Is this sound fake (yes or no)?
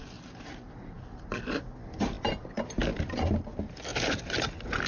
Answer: no